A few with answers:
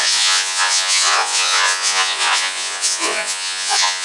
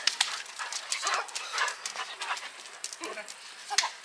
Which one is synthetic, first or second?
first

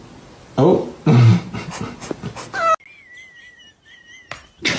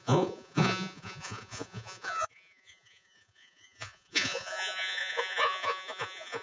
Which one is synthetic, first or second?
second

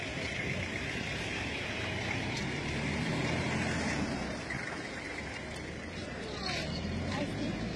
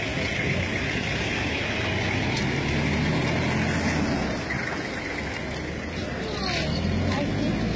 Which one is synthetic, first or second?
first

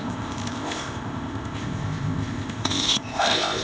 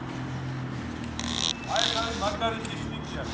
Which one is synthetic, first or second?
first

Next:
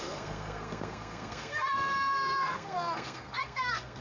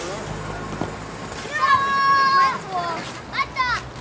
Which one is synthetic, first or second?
first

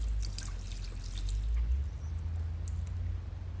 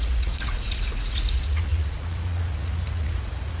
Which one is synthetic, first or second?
second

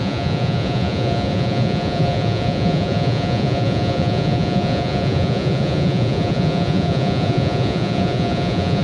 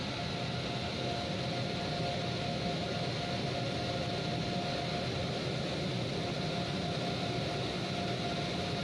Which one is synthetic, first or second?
first